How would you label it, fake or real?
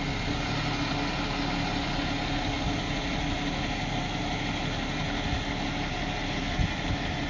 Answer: real